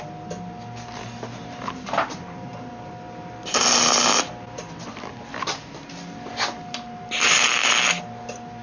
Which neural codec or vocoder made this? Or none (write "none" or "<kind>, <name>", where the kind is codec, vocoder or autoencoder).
none